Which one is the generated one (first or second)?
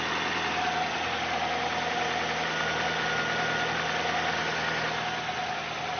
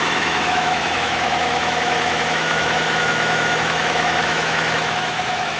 second